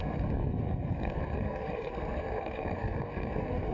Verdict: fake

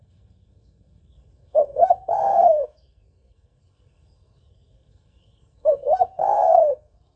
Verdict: fake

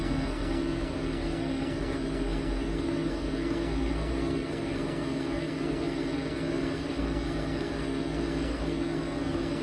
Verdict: fake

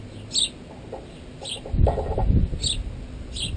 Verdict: real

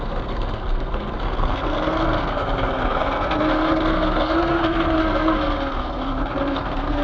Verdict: fake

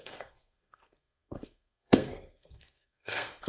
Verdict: fake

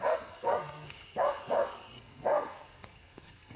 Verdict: fake